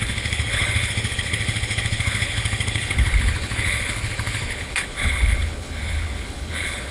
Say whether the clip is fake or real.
fake